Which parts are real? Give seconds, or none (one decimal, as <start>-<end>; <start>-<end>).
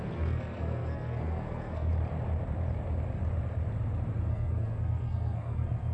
1.9-4.3